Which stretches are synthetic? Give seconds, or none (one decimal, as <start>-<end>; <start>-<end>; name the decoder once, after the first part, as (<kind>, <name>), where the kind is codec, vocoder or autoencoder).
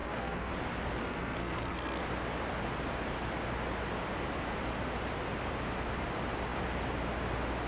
0.0-0.5 (codec, SNAC); 1.0-2.0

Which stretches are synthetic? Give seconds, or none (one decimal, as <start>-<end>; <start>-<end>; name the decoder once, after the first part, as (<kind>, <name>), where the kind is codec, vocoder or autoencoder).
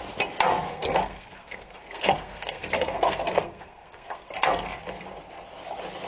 0.7-4.3 (codec, SNAC)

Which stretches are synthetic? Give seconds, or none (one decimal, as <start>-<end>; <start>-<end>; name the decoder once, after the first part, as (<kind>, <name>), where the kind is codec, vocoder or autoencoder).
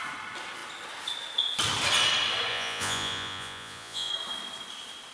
2.5-4.1 (vocoder, Vocos)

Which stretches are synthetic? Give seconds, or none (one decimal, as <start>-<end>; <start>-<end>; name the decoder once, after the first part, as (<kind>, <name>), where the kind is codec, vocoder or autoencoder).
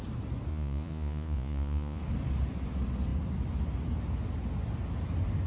0.5-2.0 (vocoder, Vocos)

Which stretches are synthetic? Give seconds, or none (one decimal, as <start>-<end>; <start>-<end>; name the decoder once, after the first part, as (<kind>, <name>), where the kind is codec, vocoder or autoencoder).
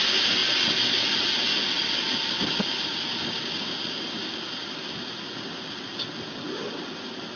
none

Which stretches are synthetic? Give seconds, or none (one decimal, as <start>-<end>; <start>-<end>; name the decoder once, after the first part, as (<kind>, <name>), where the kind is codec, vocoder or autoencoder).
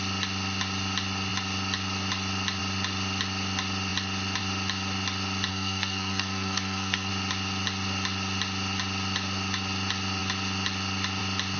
5.5-7.1 (codec, SNAC)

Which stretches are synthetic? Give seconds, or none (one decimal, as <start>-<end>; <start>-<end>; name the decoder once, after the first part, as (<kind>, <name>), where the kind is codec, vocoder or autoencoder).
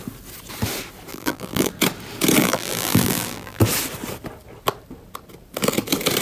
1.1-1.7 (vocoder, BigVGAN v2); 2.4-3.6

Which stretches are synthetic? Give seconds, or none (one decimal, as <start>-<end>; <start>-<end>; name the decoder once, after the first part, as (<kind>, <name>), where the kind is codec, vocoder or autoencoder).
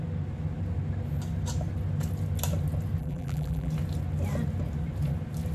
3.0-3.7 (vocoder, BigVGAN v2)